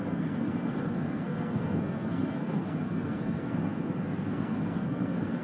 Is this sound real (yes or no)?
no